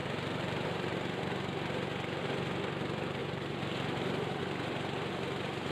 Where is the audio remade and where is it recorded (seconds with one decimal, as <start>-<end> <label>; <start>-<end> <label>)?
0.0-1.2 remade; 1.2-3.2 recorded; 3.2-4.4 remade; 4.4-5.7 recorded